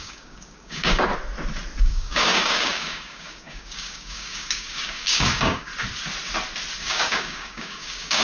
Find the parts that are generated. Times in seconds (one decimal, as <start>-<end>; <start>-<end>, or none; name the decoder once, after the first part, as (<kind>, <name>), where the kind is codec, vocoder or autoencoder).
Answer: 0.0-1.1 (codec, DAC); 1.8-5.7; 6.8-8.2